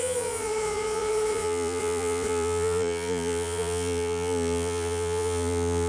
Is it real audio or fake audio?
fake